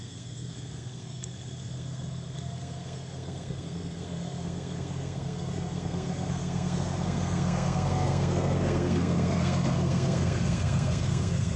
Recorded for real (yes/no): no